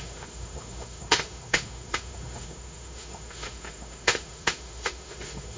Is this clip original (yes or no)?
no